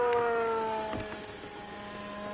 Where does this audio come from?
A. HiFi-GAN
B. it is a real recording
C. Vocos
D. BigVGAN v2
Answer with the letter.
B